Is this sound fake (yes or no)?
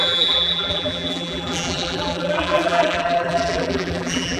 yes